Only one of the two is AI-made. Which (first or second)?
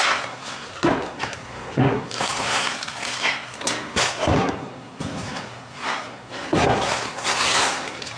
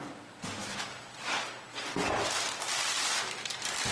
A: first